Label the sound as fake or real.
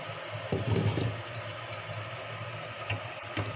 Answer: real